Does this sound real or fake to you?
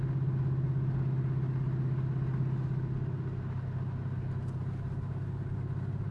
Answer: real